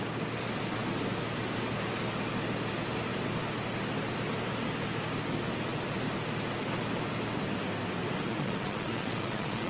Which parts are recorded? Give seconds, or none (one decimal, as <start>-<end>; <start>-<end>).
0.0-8.3